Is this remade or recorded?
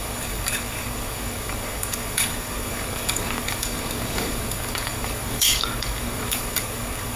remade